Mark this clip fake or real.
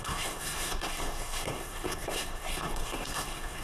fake